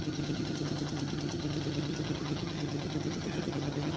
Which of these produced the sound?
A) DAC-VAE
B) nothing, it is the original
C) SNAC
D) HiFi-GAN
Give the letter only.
D